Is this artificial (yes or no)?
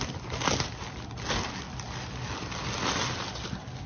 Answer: no